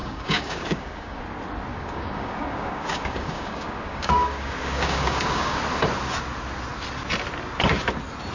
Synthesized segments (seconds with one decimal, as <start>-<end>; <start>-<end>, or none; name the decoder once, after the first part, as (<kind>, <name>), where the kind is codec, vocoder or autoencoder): 0.0-1.2 (codec, DAC); 1.7-5.6